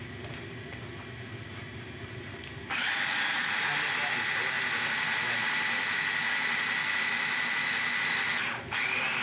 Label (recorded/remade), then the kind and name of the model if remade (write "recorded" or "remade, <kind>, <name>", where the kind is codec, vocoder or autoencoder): recorded